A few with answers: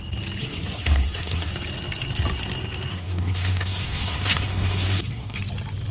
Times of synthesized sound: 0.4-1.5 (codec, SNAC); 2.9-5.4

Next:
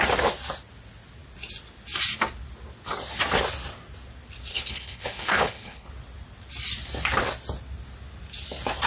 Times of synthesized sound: 4.5-5.9 (codec, HILCodec)